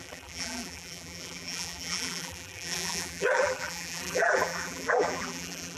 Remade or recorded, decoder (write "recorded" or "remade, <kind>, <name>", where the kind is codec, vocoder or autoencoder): remade, vocoder, BigVGAN v2